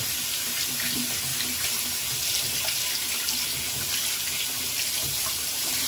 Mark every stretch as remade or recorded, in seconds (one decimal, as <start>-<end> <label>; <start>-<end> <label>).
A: 0.0-5.9 recorded